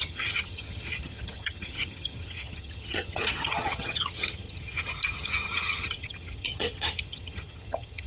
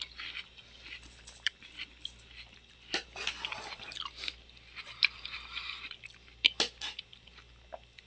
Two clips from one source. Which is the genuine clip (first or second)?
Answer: second